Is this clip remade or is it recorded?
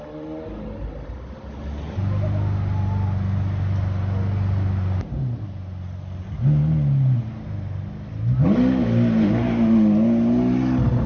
recorded